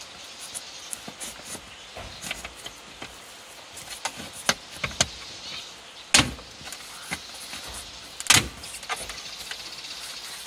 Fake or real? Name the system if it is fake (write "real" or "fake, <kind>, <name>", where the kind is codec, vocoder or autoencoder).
real